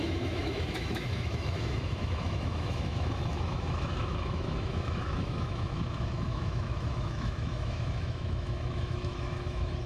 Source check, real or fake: fake